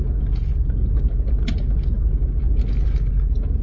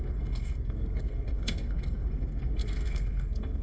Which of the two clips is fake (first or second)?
second